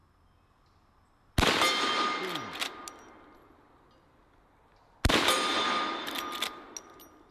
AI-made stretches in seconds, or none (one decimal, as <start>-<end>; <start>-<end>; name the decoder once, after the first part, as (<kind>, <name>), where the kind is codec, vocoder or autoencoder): none